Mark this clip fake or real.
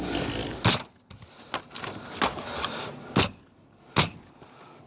real